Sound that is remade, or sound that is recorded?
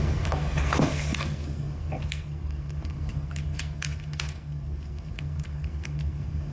remade